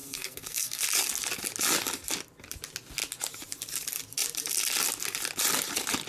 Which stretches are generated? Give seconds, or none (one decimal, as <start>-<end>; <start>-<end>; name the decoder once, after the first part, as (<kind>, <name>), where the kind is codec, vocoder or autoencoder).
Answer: 0.0-0.8 (codec, SNAC)